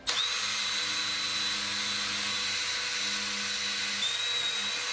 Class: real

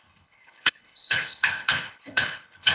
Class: fake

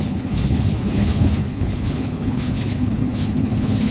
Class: fake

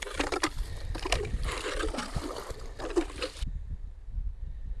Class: real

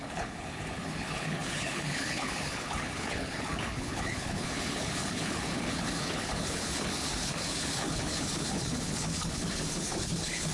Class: fake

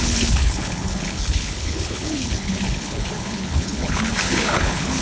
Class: fake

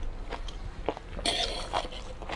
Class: real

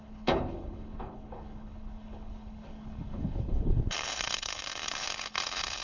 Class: fake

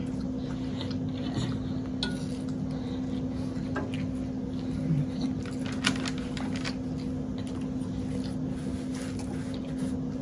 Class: real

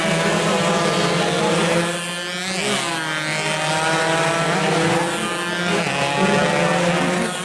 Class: real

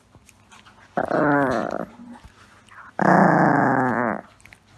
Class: real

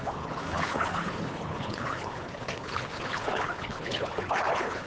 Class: fake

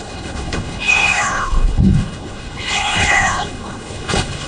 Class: fake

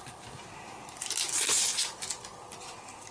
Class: real